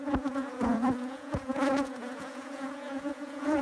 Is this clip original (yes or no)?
no